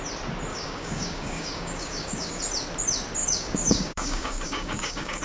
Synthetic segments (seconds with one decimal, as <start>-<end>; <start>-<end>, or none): 0.5-2.4; 3.2-5.2